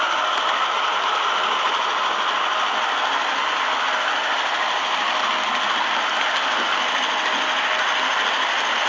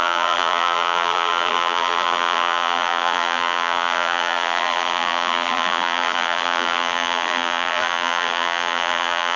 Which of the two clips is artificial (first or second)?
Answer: second